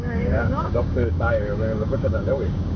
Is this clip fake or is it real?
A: fake